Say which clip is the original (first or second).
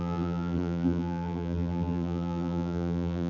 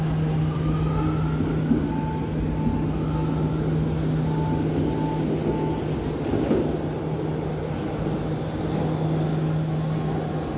second